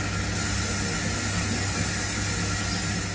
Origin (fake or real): real